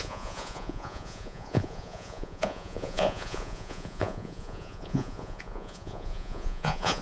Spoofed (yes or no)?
yes